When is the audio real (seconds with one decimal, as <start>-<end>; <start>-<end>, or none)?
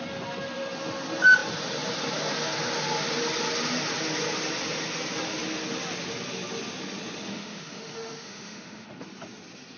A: 0.0-7.3; 8.9-9.8